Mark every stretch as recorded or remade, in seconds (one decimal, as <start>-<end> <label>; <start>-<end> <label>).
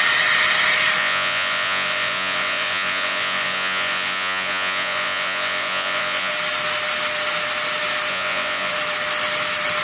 0.0-1.0 recorded; 1.0-6.3 remade; 6.3-8.1 recorded; 8.1-8.7 remade; 8.7-9.8 recorded